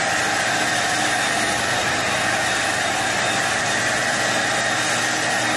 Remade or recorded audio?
recorded